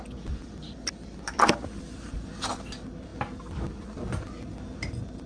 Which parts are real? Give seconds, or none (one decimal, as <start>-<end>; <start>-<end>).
0.0-5.3

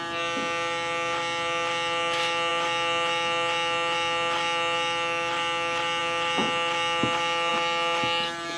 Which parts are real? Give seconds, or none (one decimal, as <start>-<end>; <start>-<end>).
0.0-8.6

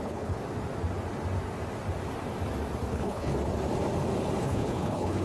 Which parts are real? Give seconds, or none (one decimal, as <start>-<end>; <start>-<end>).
0.4-2.9; 3.3-4.4

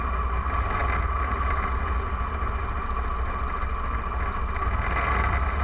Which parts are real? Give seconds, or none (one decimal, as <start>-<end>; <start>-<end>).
0.0-5.6

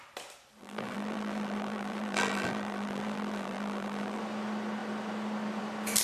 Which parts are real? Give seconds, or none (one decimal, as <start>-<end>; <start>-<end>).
0.0-0.6; 4.2-6.0

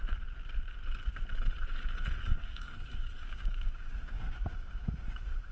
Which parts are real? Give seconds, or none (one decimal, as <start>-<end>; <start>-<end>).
0.0-2.2

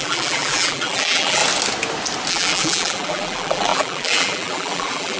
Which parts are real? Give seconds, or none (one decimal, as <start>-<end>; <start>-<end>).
1.4-2.3